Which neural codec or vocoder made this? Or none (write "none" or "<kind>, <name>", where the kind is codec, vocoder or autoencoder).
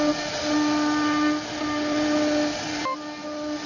none